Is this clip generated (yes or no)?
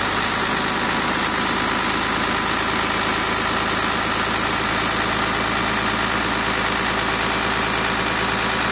no